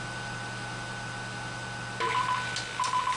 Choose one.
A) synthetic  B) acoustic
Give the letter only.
B